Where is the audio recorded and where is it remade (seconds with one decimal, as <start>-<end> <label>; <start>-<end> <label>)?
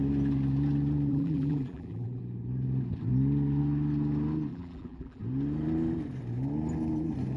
0.0-1.1 recorded; 1.1-2.2 remade; 2.2-4.5 recorded; 4.5-5.2 remade; 5.2-7.4 recorded